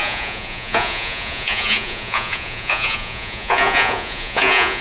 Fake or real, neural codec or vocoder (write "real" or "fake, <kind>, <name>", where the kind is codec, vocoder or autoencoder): fake, vocoder, Vocos